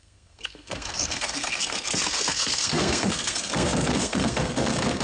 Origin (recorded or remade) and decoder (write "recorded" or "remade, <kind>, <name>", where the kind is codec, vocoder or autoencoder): remade, codec, SNAC